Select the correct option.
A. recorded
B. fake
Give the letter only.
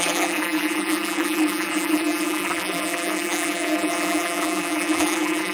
B